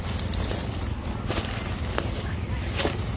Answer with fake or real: real